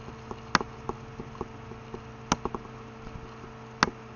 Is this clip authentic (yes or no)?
yes